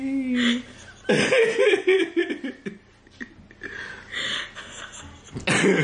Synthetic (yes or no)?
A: no